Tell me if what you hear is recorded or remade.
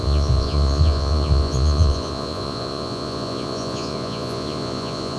remade